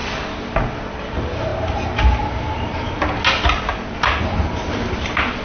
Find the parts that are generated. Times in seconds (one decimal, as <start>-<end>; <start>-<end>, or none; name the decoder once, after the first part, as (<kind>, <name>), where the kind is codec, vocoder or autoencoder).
1.0-1.5 (vocoder, BigVGAN v2); 4.7-5.4